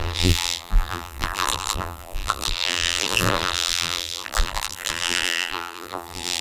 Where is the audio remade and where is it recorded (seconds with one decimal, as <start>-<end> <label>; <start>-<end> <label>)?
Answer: 0.0-6.4 remade